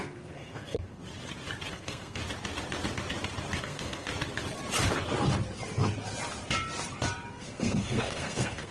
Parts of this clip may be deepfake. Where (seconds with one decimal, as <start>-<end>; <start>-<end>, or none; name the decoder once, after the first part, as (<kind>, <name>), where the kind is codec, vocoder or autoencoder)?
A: 0.0-1.0 (codec, SNAC); 1.7-2.2; 3.6-4.1; 7.3-8.7